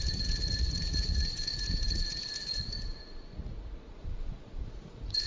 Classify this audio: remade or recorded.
remade